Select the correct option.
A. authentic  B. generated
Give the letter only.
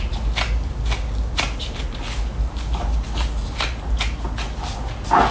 A